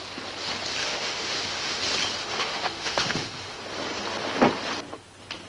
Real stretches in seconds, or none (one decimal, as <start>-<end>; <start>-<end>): 0.0-0.8; 1.8-2.2; 3.6-5.5